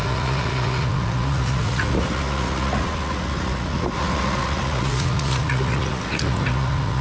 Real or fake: fake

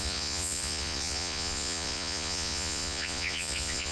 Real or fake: fake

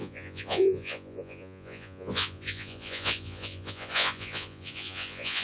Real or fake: fake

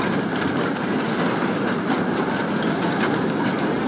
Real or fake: real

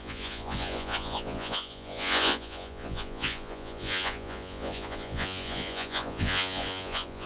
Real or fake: fake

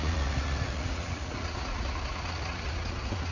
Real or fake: fake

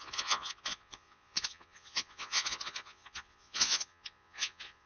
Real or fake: fake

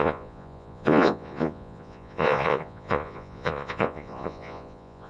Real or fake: fake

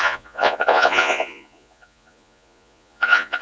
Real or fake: fake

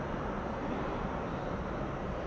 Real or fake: real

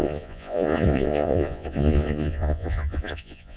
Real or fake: fake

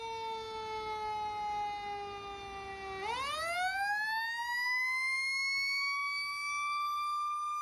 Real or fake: real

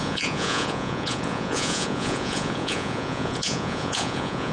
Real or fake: fake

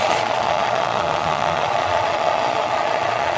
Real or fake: fake